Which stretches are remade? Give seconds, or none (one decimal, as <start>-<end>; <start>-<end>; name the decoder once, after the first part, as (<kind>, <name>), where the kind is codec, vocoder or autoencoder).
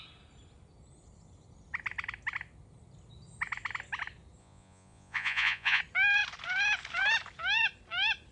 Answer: 4.4-5.8 (vocoder, Vocos)